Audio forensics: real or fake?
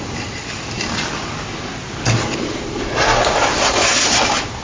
real